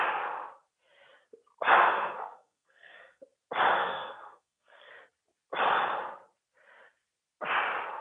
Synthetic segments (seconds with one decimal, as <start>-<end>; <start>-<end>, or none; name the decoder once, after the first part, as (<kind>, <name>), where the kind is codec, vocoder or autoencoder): 1.8-3.2 (codec, SNAC); 3.8-4.9